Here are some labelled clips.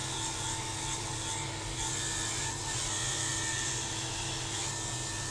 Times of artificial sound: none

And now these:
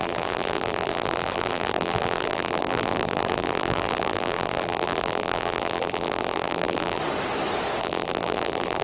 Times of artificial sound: 0.0-7.0 (vocoder, BigVGAN v2); 7.8-8.8

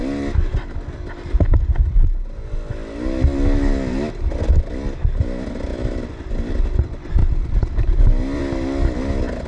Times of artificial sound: 5.7-6.5 (vocoder, BigVGAN v2); 7.2-8.4

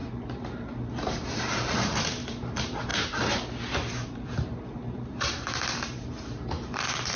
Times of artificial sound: 0.0-7.2 (vocoder, BigVGAN v2)

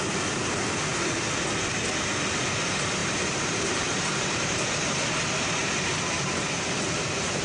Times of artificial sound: 3.0-5.0 (vocoder, BigVGAN v2); 5.6-7.4

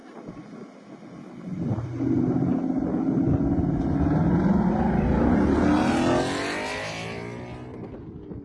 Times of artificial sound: 0.0-2.6 (vocoder, BigVGAN v2)

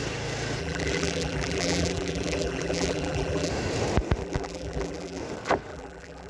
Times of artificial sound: 0.6-3.5 (vocoder, BigVGAN v2); 4.2-5.2; 5.7-6.3